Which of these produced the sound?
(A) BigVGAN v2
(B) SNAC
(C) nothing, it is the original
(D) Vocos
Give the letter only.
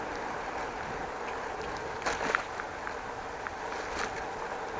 C